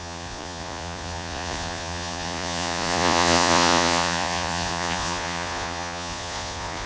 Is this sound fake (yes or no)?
yes